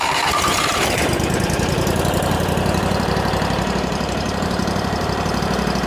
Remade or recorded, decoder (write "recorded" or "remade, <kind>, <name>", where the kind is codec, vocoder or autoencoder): remade, vocoder, BigVGAN v2